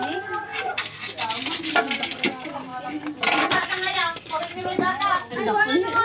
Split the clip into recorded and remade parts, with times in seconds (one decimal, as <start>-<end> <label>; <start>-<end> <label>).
0.0-0.5 recorded; 0.5-1.8 remade; 1.8-2.7 recorded; 2.7-4.4 remade; 4.4-6.0 recorded